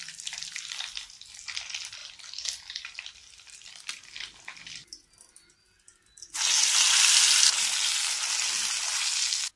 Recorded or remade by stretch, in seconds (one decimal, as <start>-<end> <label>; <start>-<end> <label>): 0.0-9.6 recorded